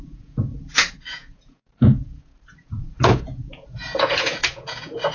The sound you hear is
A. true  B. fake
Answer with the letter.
B